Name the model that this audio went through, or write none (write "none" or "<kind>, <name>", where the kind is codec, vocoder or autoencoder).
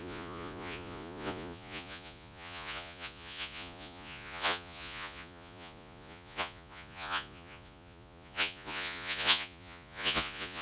vocoder, Vocos